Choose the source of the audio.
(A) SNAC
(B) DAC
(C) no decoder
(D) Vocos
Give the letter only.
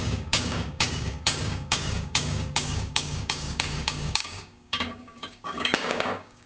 B